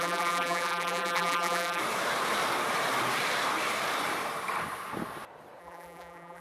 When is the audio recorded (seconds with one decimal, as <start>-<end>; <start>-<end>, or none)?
1.8-5.6